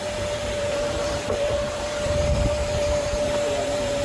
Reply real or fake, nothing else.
fake